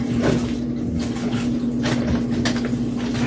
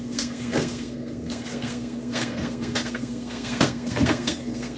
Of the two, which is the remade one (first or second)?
second